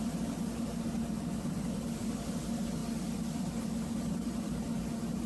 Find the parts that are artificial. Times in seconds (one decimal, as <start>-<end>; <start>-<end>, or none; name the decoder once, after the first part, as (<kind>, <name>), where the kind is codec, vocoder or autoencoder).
none